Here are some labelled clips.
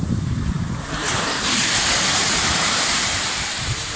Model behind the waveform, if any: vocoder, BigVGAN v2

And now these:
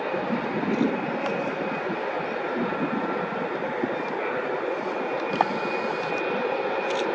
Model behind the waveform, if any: none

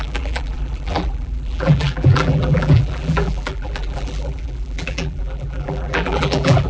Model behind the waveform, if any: vocoder, BigVGAN v2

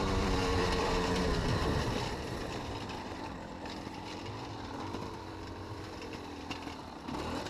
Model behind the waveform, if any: vocoder, BigVGAN v2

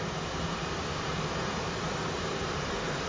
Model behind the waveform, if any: vocoder, BigVGAN v2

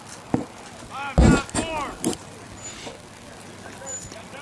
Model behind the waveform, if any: none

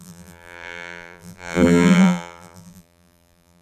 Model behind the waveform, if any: vocoder, BigVGAN v2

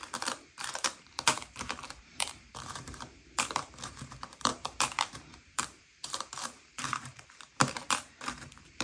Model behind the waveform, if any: vocoder, BigVGAN v2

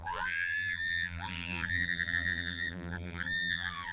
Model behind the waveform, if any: vocoder, BigVGAN v2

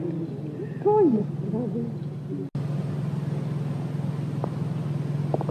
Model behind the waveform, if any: none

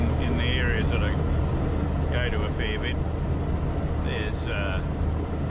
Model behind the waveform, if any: none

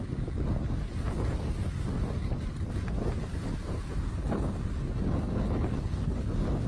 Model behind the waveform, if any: none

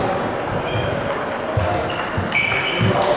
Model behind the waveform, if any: none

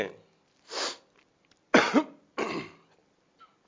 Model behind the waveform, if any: none